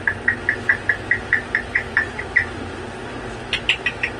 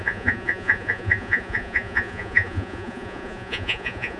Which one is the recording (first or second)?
first